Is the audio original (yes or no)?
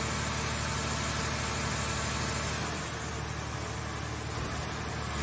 yes